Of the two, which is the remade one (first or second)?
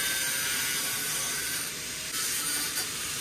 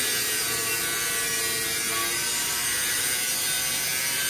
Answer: first